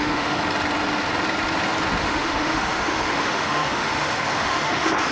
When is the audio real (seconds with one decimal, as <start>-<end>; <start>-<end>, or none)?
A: 0.4-2.0